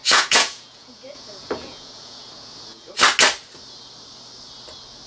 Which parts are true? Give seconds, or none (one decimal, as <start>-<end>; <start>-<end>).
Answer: 2.9-5.1

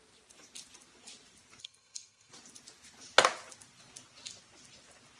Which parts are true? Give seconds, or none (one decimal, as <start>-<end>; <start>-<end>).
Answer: 0.0-1.6; 2.3-5.2

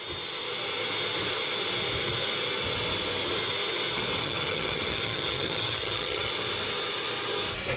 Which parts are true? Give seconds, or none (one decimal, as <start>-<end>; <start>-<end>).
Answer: 0.0-4.2; 6.3-7.8